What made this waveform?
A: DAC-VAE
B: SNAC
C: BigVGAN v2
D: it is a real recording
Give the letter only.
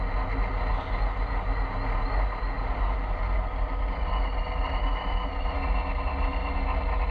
D